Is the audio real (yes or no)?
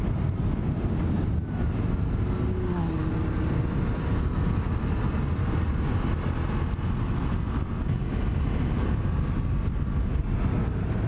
yes